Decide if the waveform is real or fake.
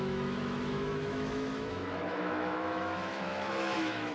fake